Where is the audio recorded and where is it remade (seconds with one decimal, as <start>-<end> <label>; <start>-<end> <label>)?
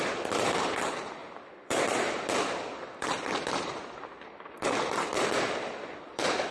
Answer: 0.0-6.5 recorded